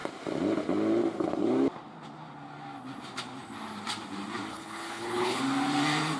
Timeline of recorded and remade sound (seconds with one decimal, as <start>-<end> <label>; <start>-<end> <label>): 0.0-4.5 recorded; 4.5-5.4 remade; 5.4-6.2 recorded